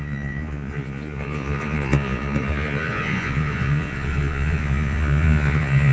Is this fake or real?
fake